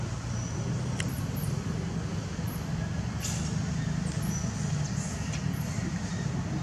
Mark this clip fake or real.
real